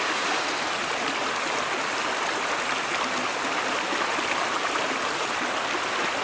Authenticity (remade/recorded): recorded